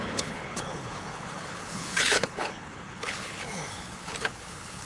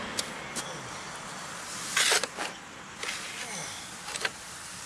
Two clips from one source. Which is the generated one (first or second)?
first